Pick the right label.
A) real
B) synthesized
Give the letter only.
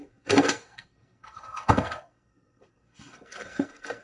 B